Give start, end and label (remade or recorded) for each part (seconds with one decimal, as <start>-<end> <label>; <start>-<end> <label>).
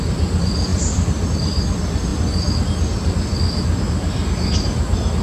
0.0-5.2 recorded